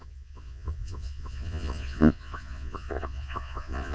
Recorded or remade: remade